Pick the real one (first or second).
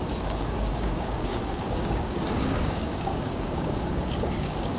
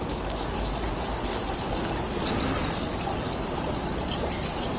second